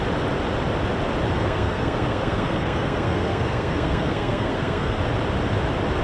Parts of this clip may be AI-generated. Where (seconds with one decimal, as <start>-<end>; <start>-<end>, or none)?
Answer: 1.4-5.0

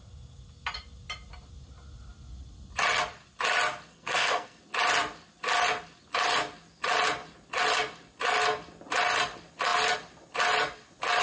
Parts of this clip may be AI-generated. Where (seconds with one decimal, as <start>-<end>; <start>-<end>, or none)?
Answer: 3.9-4.6